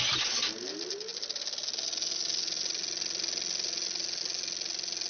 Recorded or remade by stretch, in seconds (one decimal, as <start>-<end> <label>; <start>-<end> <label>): 0.0-5.1 recorded